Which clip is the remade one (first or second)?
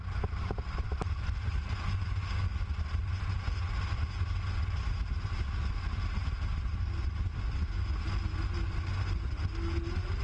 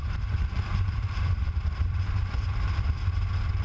second